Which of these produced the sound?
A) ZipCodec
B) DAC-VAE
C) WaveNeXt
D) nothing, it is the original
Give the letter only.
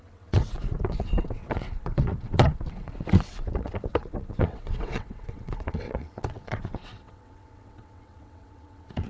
C